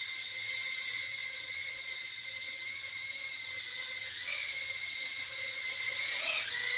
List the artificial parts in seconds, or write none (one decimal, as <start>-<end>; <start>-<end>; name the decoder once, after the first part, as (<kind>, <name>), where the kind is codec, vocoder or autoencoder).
0.0-6.8 (vocoder, WaveNeXt)

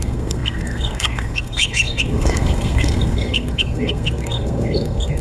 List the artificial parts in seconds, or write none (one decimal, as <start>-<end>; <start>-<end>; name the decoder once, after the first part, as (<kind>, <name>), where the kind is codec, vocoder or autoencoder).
0.0-5.2 (codec, SNAC)

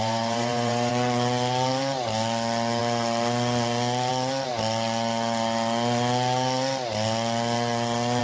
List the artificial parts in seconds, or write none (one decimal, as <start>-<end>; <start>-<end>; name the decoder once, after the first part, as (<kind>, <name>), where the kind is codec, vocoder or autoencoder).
0.0-0.9 (vocoder, BigVGAN v2)

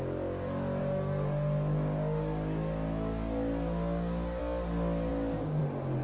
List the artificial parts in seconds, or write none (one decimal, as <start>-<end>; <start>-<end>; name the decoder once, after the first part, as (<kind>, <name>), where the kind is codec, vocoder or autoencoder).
0.8-4.4 (codec, DAC); 5.1-5.6